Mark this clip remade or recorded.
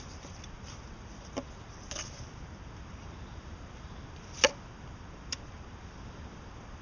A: recorded